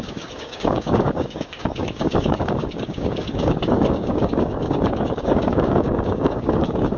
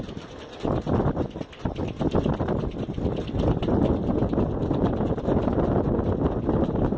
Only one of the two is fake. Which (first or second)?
first